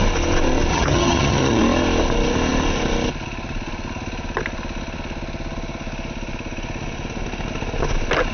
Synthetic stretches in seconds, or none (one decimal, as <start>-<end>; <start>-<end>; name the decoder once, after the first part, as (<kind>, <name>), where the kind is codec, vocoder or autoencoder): 0.7-1.6 (vocoder, HiFi-GAN)